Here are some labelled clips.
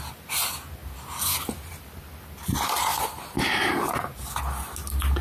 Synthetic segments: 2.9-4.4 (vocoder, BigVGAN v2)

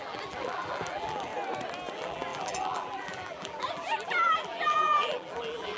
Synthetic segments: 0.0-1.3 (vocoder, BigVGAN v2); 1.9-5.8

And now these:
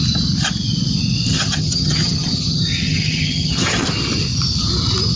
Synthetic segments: 1.3-3.9 (vocoder, HiFi-GAN)

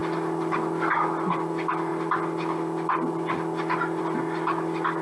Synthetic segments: none

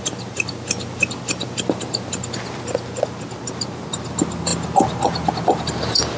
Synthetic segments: none

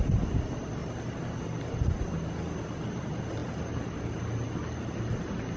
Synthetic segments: none

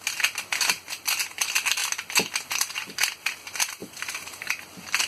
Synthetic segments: 0.5-1.0 (vocoder, BigVGAN v2); 3.8-4.5

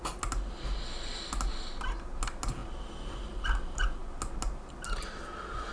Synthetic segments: none